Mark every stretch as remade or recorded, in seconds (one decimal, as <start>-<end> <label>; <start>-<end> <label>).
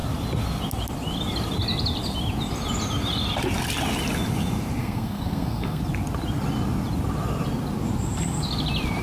0.0-4.8 recorded; 4.8-5.8 remade; 5.8-9.0 recorded